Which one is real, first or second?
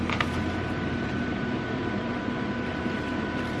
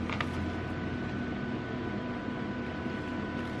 second